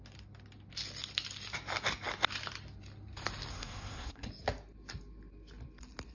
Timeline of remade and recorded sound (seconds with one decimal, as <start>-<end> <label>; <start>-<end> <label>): 0.0-3.5 recorded; 3.5-4.3 remade; 4.3-6.1 recorded